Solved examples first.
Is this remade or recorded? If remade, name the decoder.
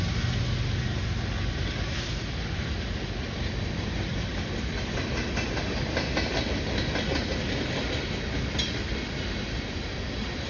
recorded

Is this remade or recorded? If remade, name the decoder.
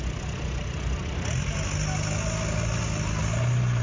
recorded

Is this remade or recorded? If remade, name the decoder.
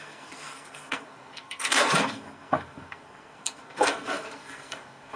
remade, codec, SNAC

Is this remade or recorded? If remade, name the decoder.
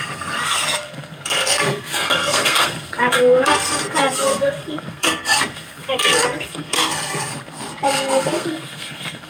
remade, codec, SNAC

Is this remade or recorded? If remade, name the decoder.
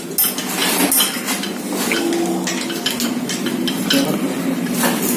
recorded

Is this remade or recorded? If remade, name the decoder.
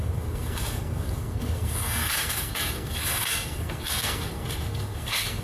remade, codec, SNAC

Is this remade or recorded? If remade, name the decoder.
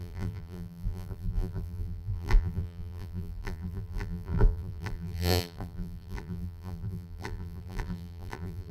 remade, vocoder, BigVGAN v2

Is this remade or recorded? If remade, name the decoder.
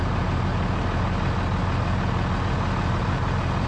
recorded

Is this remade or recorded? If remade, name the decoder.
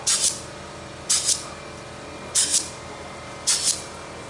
recorded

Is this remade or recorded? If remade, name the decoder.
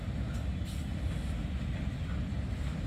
recorded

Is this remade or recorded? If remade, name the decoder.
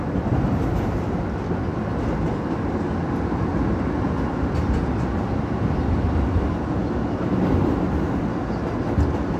recorded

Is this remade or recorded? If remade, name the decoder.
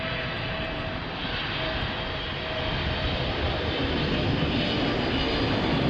recorded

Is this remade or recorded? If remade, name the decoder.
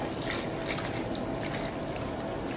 recorded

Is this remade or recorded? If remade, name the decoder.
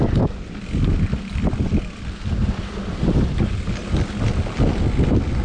recorded